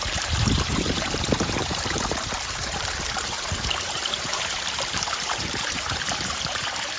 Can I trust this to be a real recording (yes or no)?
no